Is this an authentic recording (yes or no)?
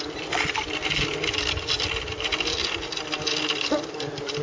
yes